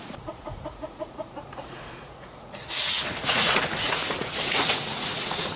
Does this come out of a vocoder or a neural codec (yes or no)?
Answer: yes